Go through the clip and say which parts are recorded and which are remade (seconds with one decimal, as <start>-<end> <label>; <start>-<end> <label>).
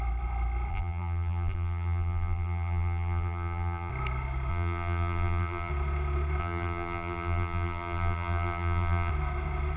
0.0-0.7 recorded; 0.7-3.9 remade; 3.9-4.5 recorded; 4.5-5.7 remade; 5.7-6.4 recorded; 6.4-9.1 remade; 9.1-9.8 recorded